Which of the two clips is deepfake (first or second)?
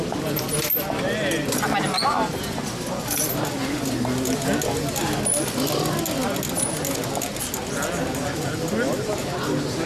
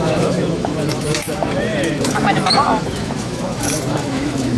second